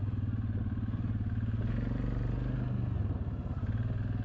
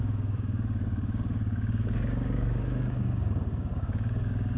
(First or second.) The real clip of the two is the first